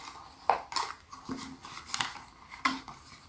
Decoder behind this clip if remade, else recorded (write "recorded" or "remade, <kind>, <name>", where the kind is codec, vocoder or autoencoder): recorded